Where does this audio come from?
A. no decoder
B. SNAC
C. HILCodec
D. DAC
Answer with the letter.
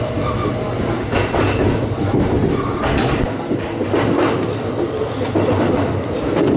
A